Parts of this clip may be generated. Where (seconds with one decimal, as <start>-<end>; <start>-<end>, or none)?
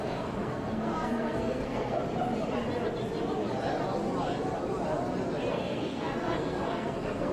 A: 0.0-2.0; 5.5-7.3